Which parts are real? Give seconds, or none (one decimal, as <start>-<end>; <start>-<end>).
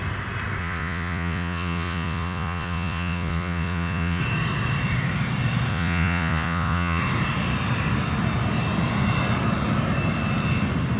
0.0-0.6; 4.2-5.7; 7.0-11.0